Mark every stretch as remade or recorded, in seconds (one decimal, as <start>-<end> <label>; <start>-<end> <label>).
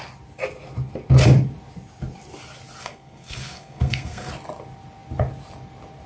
0.0-2.8 recorded; 2.8-4.3 remade; 4.3-6.1 recorded